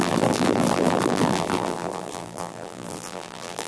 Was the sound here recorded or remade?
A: remade